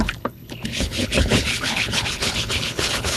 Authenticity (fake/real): fake